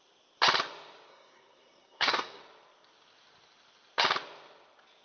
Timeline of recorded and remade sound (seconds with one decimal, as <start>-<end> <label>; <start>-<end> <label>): 0.0-1.1 recorded; 1.1-2.4 remade; 2.4-5.0 recorded